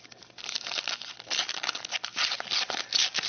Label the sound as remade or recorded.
recorded